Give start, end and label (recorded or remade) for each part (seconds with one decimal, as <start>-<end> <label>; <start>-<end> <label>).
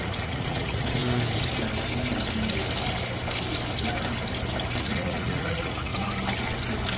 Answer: 0.0-1.0 remade; 1.0-4.8 recorded; 4.8-5.9 remade; 5.9-7.0 recorded